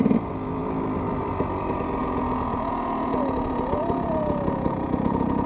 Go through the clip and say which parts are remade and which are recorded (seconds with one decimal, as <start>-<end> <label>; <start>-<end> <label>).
0.0-2.0 recorded; 2.0-5.5 remade